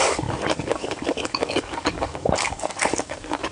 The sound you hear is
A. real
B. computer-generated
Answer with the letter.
B